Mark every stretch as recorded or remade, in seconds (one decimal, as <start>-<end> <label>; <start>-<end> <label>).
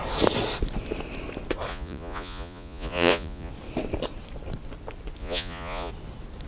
0.0-1.7 recorded; 1.7-3.5 remade; 3.5-5.2 recorded; 5.2-5.9 remade; 5.9-6.5 recorded